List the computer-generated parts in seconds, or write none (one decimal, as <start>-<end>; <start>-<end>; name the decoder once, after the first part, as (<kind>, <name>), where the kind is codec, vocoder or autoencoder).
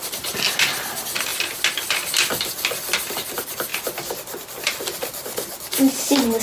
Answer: none